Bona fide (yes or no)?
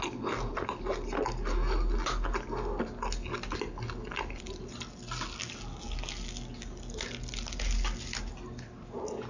yes